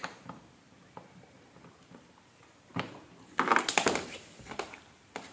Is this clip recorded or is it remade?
recorded